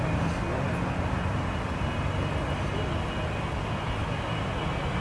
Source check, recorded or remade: recorded